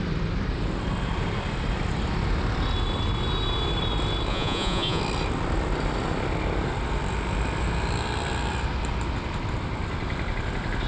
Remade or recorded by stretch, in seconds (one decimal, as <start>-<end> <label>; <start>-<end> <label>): 0.0-4.3 recorded; 4.3-5.0 remade; 5.0-10.9 recorded